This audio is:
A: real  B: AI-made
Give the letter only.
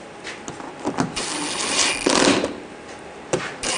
A